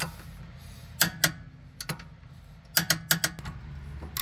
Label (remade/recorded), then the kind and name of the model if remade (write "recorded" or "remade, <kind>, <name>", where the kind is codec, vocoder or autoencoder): recorded